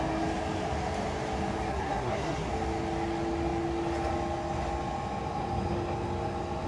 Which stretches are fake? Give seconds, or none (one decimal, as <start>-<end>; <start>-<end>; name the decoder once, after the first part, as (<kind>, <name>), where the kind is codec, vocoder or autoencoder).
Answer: 1.7-2.5 (codec, SNAC)